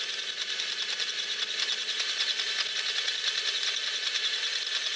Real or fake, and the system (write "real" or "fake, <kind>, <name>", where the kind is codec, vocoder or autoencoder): real